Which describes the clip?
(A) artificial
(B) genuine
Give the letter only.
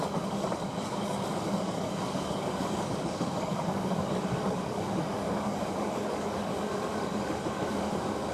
A